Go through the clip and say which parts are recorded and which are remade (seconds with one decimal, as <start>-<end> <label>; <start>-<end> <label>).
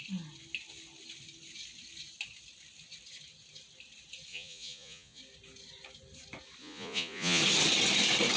0.0-4.3 recorded; 4.3-5.2 remade; 5.2-6.6 recorded; 6.6-7.4 remade; 7.4-8.4 recorded